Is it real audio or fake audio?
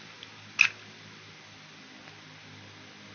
real